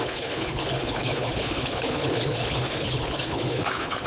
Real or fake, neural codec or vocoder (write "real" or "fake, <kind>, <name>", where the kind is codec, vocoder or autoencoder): fake, codec, HILCodec